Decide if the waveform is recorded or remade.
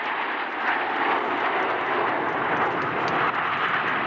recorded